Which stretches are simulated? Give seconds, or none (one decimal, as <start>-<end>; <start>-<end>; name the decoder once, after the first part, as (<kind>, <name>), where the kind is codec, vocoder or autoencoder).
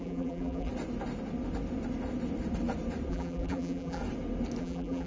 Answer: 0.0-0.7 (vocoder, BigVGAN v2); 3.1-4.0; 4.6-5.1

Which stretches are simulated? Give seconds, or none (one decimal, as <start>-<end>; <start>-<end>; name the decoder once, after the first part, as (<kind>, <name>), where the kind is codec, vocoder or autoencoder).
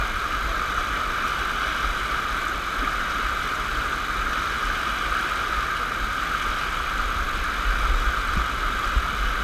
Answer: none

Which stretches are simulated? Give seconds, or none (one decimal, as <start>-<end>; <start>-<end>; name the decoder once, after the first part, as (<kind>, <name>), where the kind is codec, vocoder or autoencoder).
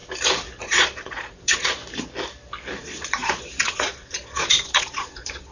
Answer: 0.6-1.8 (vocoder, Vocos); 2.8-5.5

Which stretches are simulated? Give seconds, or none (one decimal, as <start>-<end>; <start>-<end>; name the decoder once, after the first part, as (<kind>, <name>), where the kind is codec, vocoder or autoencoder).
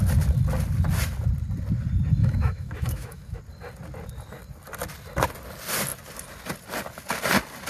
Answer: 2.2-3.4 (autoencoder, DAC-VAE)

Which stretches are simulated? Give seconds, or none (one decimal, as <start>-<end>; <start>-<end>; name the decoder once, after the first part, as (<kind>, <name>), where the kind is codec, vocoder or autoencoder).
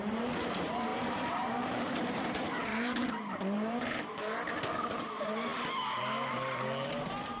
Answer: 0.0-5.5 (vocoder, BigVGAN v2); 6.9-7.4